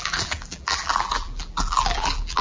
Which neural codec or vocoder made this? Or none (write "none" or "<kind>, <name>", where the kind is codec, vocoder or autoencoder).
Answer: vocoder, BigVGAN v2